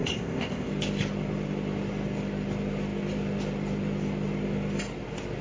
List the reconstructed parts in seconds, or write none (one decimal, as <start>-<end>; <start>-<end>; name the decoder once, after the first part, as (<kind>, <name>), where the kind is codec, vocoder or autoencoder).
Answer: 0.0-0.7 (codec, ZipCodec)